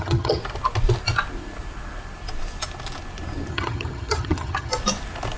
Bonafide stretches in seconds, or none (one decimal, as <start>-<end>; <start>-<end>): 0.4-3.5; 4.7-5.4